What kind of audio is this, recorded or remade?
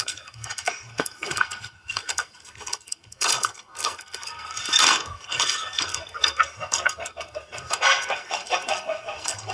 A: remade